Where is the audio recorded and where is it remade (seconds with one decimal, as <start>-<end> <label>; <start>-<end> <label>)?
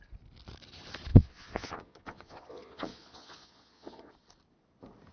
0.0-1.1 recorded; 1.1-4.1 remade; 4.1-5.1 recorded